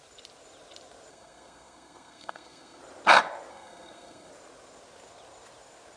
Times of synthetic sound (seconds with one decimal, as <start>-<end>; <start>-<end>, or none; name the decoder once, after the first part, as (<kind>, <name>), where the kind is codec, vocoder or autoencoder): 1.1-2.8 (codec, SNAC); 3.5-4.3